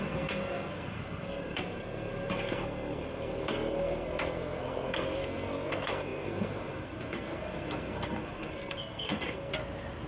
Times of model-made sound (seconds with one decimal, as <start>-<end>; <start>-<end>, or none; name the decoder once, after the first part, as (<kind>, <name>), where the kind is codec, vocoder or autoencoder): 0.0-9.5 (codec, SNAC)